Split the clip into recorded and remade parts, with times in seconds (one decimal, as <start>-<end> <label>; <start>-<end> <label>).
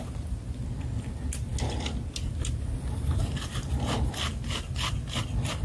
0.0-5.6 recorded